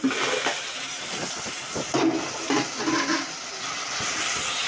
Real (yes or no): yes